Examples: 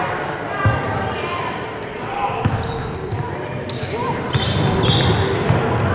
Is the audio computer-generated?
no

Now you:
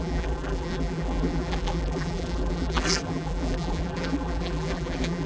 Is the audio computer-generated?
yes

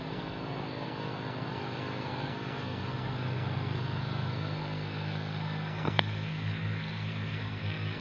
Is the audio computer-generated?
yes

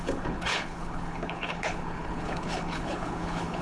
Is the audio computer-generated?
yes